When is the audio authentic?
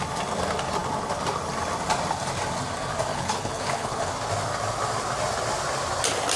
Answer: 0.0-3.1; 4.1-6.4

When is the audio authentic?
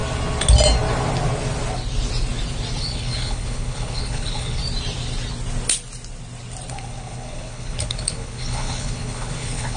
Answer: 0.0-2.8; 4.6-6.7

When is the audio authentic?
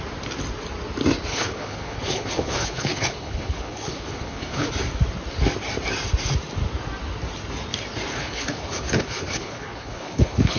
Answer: 0.0-1.3; 4.7-8.1